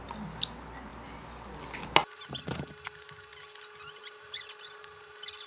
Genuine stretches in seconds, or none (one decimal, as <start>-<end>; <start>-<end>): 0.0-5.5